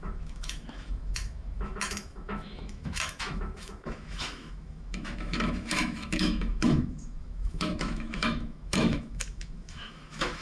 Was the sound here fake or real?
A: fake